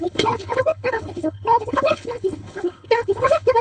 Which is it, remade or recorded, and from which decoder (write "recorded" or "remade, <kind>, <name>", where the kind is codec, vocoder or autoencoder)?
remade, codec, HILCodec